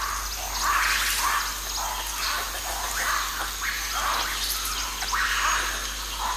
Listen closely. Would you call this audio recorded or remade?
recorded